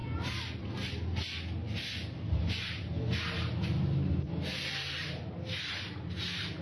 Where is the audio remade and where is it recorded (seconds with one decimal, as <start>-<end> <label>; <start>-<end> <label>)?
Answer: 0.0-6.6 recorded